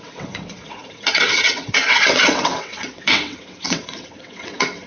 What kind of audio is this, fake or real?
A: fake